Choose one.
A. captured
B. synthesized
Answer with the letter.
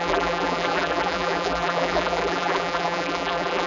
B